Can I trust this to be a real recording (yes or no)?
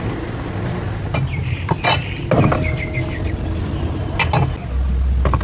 yes